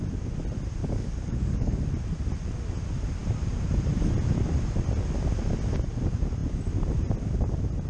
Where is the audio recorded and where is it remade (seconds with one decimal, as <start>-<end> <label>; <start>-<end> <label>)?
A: 0.0-0.8 recorded; 0.8-1.8 remade; 1.8-7.9 recorded